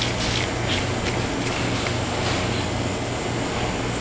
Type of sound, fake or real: real